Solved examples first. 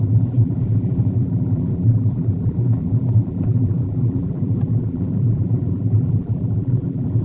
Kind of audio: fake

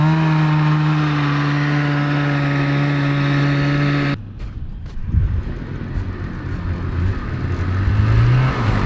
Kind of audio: real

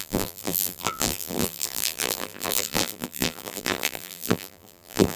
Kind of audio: fake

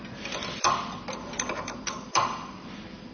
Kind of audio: real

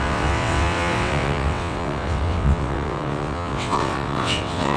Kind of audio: fake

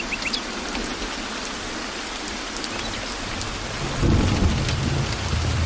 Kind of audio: real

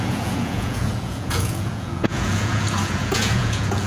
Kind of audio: fake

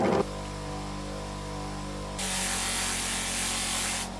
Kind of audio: real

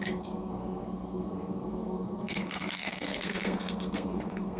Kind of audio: fake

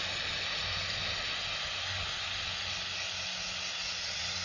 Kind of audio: real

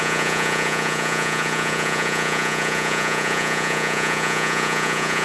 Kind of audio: fake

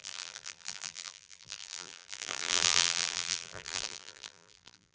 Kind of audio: fake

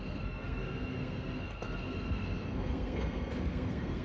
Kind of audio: fake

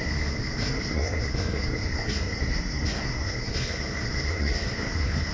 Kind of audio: fake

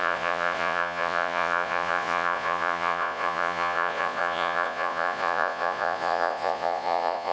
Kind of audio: fake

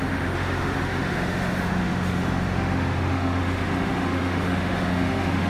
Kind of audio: fake